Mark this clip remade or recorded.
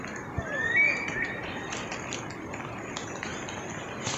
recorded